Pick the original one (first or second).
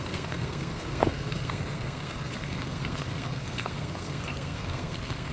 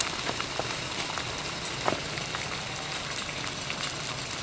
second